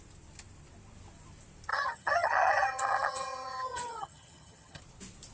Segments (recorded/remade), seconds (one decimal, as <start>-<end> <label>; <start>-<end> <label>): 0.0-1.7 recorded; 1.7-4.8 remade; 4.8-5.3 recorded